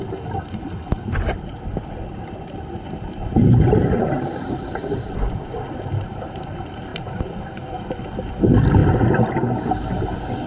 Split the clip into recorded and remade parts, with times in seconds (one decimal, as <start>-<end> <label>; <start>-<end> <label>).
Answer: 0.0-3.2 recorded; 3.2-5.7 remade; 5.7-10.5 recorded